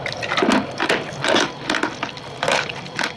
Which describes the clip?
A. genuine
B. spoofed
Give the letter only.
A